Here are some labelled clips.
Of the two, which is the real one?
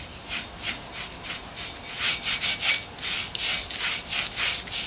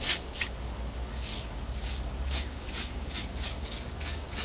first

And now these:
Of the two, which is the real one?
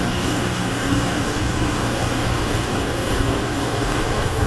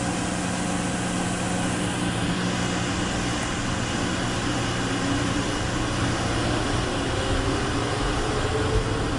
second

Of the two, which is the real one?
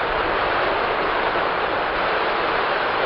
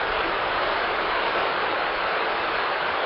first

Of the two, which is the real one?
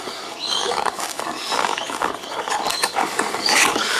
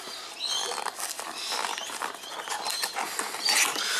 second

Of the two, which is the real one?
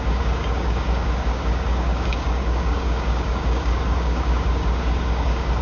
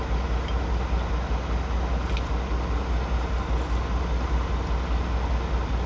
second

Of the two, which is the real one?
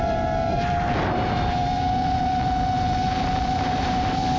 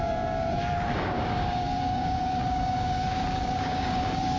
first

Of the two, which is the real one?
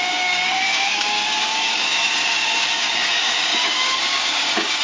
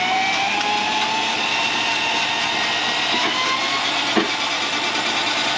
second